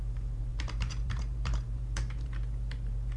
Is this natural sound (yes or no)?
no